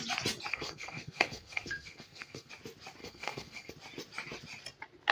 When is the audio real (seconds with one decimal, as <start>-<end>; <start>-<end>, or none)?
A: 0.0-0.5; 2.5-3.0; 3.7-5.1

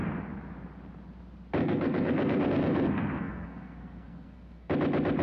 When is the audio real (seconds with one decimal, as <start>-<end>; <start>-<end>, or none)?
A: 0.0-1.6; 4.7-5.2

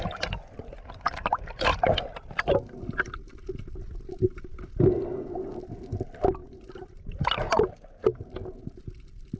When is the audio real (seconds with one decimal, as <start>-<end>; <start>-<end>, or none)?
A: 0.0-9.4

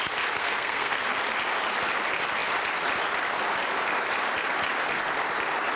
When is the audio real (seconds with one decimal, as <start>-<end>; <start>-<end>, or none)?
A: 0.0-0.4; 1.1-5.8

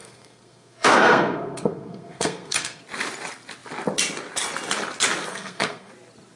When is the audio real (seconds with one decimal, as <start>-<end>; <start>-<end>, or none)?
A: 2.8-5.3; 5.9-6.4